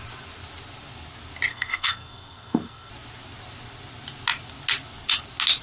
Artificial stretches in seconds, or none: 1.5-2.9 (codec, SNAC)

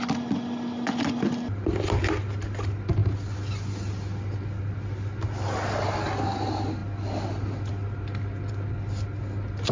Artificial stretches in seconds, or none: none